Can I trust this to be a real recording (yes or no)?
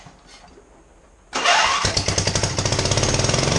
yes